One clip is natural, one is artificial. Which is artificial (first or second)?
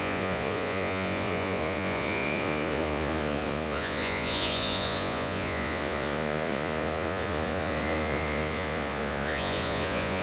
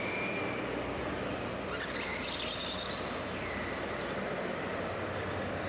first